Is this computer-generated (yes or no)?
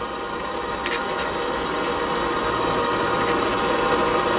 no